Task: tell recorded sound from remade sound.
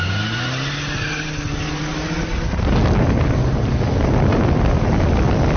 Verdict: recorded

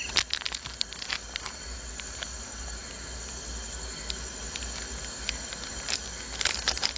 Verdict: recorded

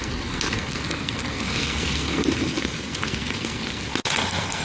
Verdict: remade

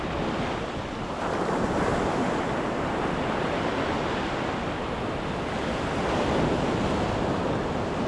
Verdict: recorded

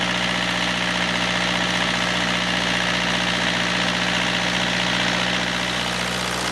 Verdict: recorded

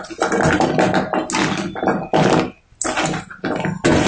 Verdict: recorded